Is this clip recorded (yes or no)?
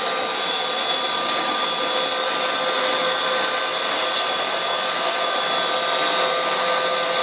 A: yes